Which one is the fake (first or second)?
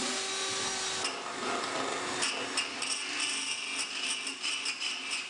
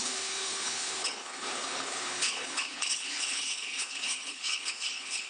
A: second